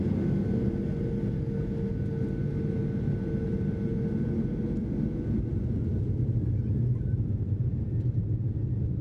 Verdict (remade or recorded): recorded